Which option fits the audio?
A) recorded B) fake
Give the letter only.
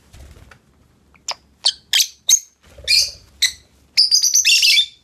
A